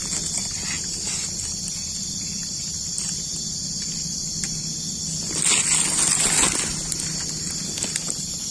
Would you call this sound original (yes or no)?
yes